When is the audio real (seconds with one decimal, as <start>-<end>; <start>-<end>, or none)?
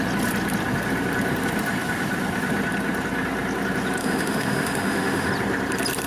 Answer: 0.0-4.0; 5.3-6.1